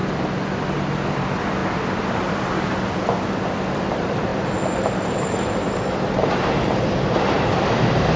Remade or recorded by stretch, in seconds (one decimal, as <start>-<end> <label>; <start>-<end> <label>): 0.0-0.7 recorded; 0.7-8.2 remade